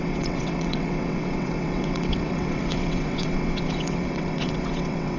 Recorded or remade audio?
remade